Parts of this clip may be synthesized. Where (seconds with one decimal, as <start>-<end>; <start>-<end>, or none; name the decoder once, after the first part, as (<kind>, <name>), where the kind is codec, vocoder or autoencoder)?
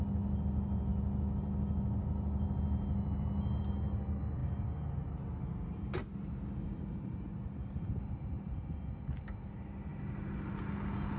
none